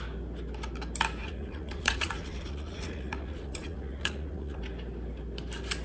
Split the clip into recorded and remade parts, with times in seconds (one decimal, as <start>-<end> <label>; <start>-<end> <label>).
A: 0.0-1.2 recorded; 1.2-4.6 remade; 4.6-5.8 recorded